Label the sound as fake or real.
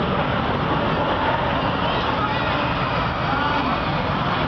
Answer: real